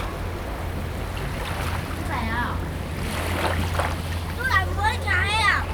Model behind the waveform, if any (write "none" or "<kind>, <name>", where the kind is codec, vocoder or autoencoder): none